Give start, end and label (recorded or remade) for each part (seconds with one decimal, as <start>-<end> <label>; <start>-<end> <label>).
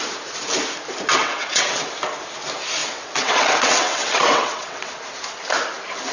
0.0-1.2 recorded; 1.2-1.9 remade; 1.9-2.8 recorded; 2.8-4.9 remade; 4.9-6.1 recorded